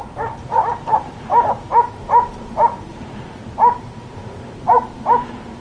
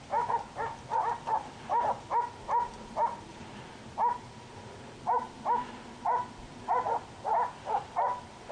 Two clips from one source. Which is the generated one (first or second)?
first